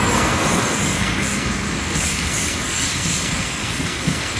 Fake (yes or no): yes